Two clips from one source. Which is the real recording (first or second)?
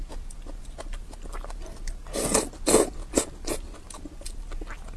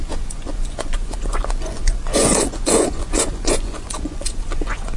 first